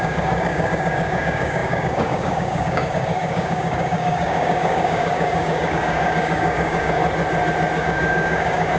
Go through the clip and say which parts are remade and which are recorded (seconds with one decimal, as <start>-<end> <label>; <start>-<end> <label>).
0.0-7.0 remade; 7.0-7.8 recorded; 7.8-8.8 remade